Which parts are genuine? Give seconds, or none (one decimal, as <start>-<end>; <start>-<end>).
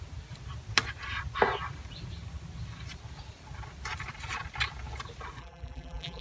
0.0-5.4